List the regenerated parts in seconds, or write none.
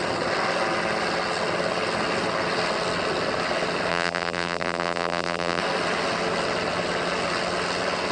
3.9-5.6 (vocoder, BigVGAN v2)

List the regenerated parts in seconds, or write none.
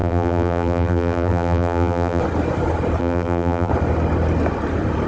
0.0-2.2 (vocoder, BigVGAN v2); 3.0-3.7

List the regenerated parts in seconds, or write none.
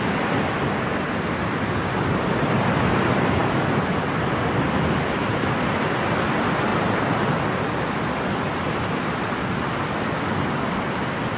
none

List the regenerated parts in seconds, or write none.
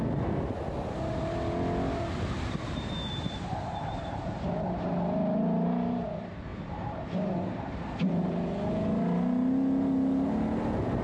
3.2-4.9 (vocoder, BigVGAN v2); 6.5-7.9